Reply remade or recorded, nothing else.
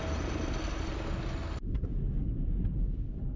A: recorded